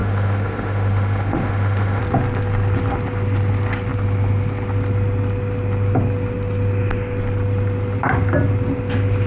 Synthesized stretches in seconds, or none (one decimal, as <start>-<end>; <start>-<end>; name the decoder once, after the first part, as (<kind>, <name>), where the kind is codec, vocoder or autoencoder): 0.0-2.0 (autoencoder, DAC-VAE)